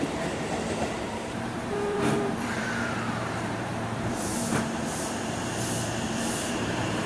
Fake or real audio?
fake